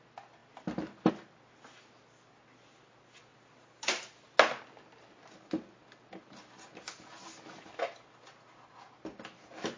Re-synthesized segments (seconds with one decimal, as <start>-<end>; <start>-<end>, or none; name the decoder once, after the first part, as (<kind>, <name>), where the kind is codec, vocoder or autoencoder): 0.4-1.1 (vocoder, BigVGAN v2)